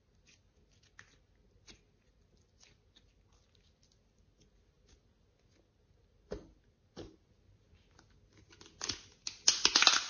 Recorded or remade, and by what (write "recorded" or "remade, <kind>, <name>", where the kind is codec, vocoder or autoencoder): recorded